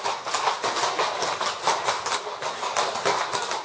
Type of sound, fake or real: real